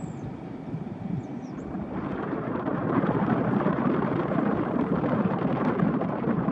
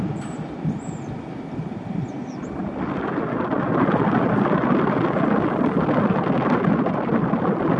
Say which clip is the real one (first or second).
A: second